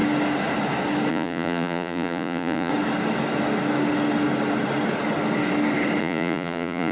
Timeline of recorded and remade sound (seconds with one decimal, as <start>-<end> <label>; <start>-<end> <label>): 0.0-1.1 recorded; 1.1-2.7 remade; 2.7-6.0 recorded; 6.0-6.9 remade